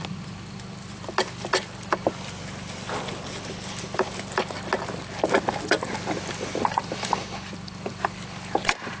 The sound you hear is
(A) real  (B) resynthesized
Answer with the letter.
A